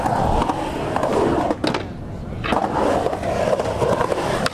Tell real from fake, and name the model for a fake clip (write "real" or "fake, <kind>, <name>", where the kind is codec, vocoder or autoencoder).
real